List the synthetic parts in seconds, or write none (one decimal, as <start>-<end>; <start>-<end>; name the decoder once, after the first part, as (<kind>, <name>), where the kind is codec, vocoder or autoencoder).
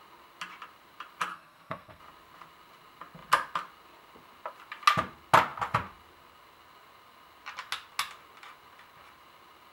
1.3-2.0 (codec, SNAC)